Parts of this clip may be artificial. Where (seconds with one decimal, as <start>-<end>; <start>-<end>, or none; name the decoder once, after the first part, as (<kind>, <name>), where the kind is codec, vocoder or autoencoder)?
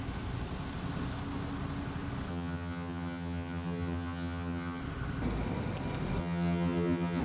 2.3-4.8 (vocoder, HiFi-GAN); 6.2-7.2